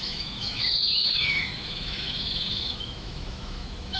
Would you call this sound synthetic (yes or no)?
yes